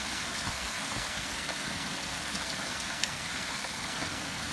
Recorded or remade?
remade